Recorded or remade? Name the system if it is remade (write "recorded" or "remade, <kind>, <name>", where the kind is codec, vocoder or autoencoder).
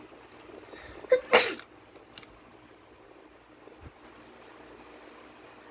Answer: recorded